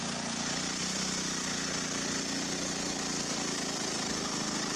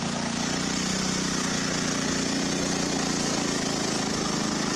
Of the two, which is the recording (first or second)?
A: second